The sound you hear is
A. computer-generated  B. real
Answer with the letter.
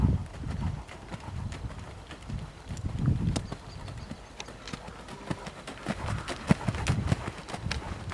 B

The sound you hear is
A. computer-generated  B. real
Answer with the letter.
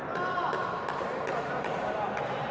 B